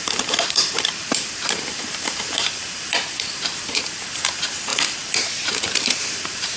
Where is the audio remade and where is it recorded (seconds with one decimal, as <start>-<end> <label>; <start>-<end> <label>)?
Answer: 0.0-6.6 remade